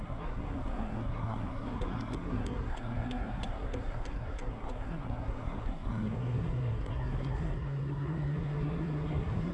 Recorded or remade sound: remade